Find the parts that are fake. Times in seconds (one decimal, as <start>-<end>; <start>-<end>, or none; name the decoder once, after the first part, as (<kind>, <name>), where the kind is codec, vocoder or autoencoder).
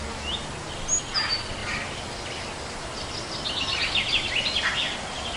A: none